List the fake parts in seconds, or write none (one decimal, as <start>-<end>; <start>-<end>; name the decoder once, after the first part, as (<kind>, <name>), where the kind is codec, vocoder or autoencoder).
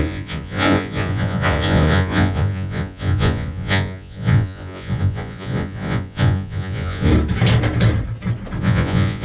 0.0-7.1 (vocoder, Vocos); 8.6-9.2